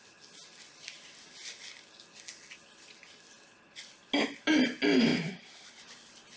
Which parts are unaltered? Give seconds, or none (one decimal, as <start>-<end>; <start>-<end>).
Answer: 0.0-5.1; 5.8-6.4

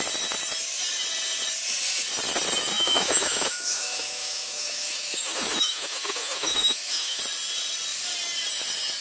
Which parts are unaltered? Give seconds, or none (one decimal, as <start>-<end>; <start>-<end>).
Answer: 0.0-2.7; 7.2-9.0